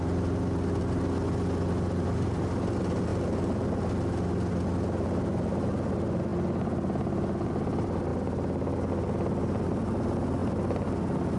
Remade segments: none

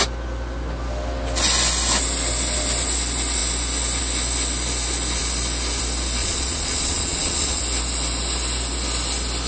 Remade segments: 6.2-7.6 (vocoder, Vocos)